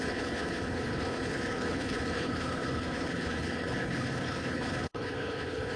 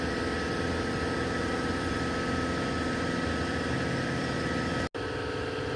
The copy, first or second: first